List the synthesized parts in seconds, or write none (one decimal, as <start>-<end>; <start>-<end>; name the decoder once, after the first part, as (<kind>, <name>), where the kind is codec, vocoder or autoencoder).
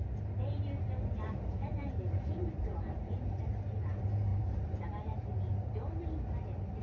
1.7-3.4 (vocoder, BigVGAN v2); 4.3-6.0